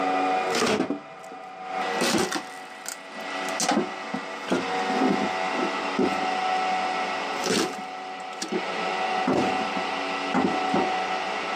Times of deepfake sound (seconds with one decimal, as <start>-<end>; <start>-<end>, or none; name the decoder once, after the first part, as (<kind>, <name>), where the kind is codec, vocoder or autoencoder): 7.4-8.9 (vocoder, BigVGAN v2)